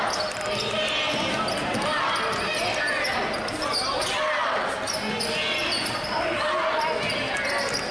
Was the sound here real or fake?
real